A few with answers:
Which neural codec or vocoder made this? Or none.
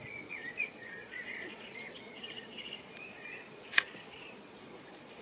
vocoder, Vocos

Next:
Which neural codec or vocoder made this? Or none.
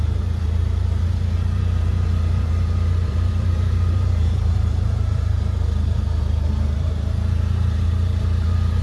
vocoder, BigVGAN v2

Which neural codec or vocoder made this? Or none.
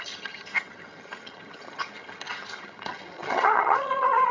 vocoder, HiFi-GAN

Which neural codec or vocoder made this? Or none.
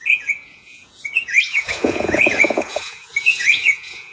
vocoder, Vocos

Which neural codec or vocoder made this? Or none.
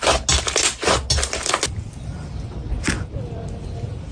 none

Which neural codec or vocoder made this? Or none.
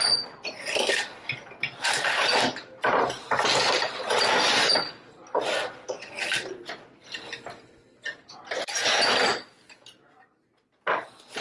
none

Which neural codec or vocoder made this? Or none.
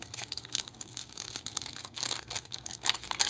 codec, SNAC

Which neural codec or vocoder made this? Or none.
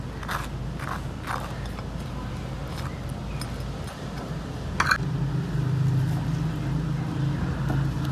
none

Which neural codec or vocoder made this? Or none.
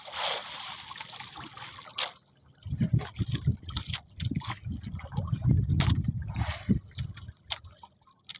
none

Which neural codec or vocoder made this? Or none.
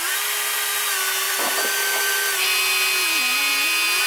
none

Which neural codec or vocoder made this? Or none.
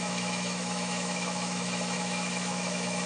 autoencoder, DAC-VAE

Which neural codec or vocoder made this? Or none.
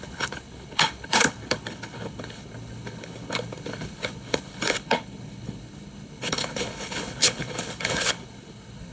codec, HILCodec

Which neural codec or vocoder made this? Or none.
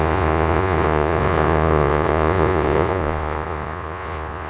vocoder, Vocos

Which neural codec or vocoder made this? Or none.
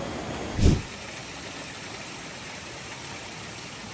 none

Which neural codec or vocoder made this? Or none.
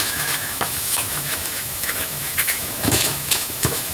autoencoder, DAC-VAE